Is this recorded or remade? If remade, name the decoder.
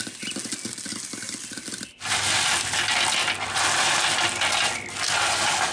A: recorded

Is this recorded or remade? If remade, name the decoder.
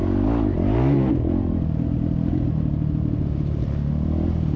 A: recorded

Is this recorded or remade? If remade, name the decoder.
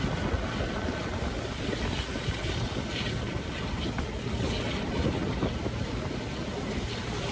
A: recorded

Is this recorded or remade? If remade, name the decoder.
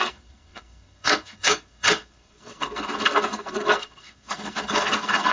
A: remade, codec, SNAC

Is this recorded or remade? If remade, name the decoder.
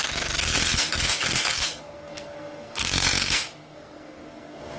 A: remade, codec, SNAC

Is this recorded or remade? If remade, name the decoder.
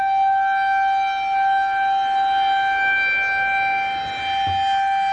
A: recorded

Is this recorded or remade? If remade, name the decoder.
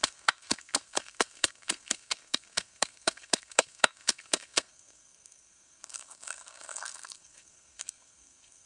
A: remade, codec, SNAC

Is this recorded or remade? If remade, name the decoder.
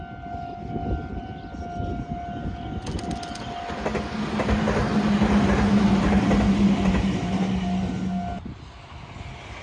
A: recorded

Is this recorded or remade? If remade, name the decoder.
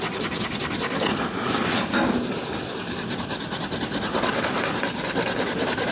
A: recorded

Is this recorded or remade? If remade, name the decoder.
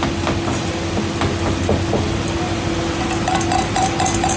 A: recorded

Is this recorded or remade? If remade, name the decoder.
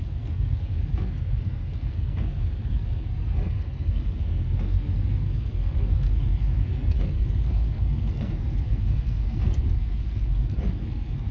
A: remade, codec, SNAC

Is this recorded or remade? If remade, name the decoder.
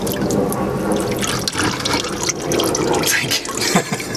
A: recorded